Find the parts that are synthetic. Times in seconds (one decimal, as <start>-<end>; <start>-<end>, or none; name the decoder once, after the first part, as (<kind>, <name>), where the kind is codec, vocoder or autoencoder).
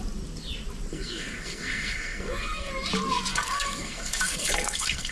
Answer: 0.9-2.7 (codec, SNAC); 3.3-5.1